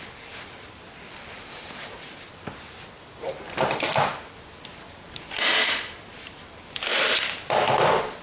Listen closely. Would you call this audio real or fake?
fake